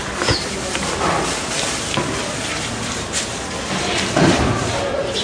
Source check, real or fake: real